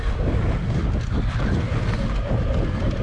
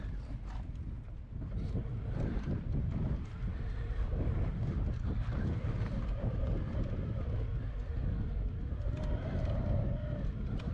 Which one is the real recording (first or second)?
first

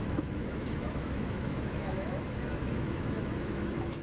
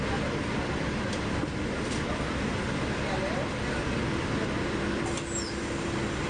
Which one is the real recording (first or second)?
second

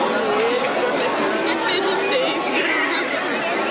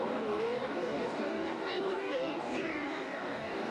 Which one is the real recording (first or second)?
first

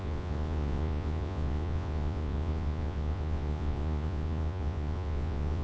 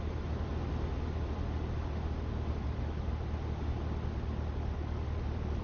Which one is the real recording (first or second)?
second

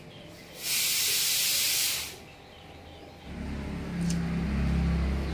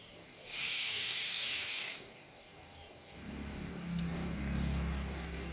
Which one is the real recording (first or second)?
first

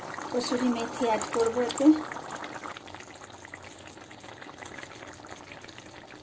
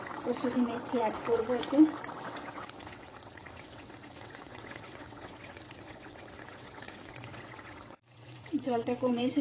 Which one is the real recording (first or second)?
first